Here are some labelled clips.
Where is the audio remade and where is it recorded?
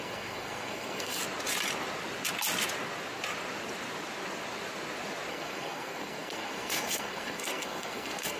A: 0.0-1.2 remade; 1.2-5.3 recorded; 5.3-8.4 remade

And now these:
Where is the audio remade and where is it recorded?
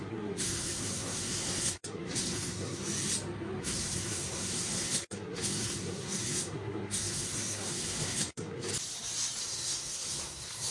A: 0.0-2.8 remade; 2.8-3.6 recorded; 3.6-8.7 remade; 8.7-9.4 recorded; 9.4-10.7 remade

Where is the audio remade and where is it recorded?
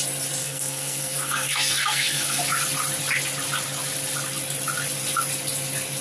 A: 0.0-0.4 recorded; 0.4-2.4 remade; 2.4-6.0 recorded